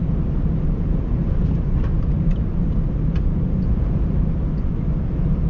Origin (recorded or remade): remade